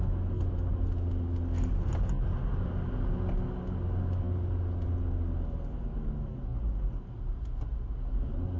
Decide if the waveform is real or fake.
real